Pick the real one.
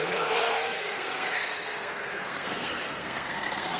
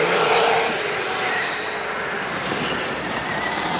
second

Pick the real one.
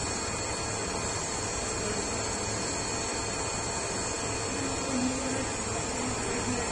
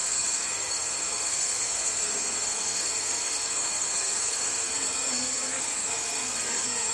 first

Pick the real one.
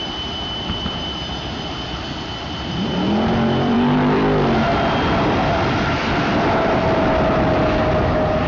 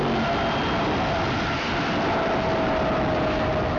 second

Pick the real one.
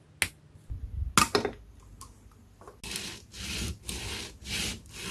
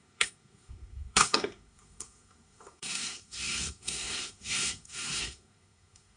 first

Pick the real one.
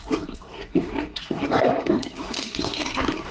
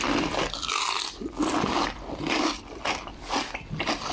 second